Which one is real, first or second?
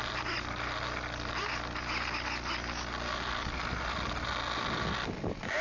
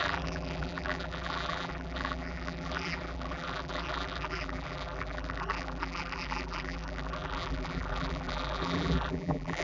first